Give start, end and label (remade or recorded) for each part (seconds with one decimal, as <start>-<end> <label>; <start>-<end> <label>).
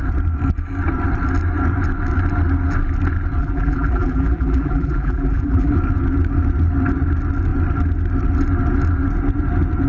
0.0-3.4 recorded; 3.4-5.7 remade; 5.7-9.9 recorded